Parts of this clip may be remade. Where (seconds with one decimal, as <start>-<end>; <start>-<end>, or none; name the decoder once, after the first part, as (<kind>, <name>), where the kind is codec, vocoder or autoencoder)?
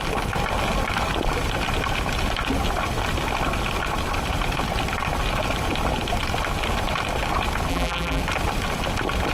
7.7-8.2 (vocoder, BigVGAN v2)